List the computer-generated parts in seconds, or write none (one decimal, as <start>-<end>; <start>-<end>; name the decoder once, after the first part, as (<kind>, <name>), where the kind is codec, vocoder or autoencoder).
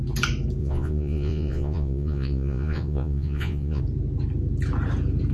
0.6-3.8 (vocoder, Vocos)